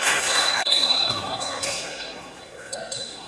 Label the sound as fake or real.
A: fake